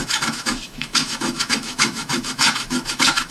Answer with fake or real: fake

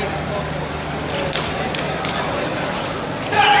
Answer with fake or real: real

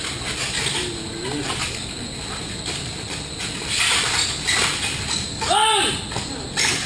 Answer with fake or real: real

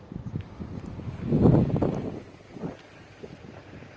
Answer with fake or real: real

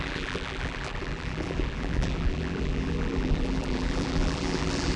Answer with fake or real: fake